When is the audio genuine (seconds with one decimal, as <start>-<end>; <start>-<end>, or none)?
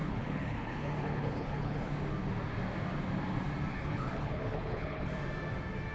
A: 1.9-3.7; 5.1-5.9